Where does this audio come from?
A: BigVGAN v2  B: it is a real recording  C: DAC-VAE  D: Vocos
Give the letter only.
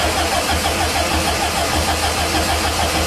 B